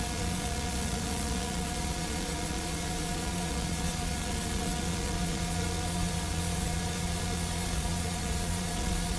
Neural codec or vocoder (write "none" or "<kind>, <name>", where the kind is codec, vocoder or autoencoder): vocoder, Vocos